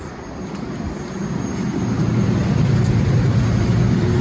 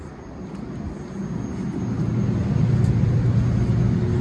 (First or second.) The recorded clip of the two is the second